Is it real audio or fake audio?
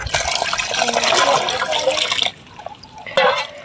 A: real